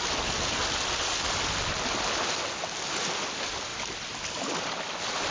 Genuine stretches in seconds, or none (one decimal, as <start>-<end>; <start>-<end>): 0.0-5.3